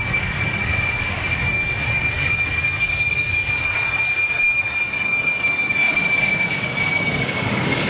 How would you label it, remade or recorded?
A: remade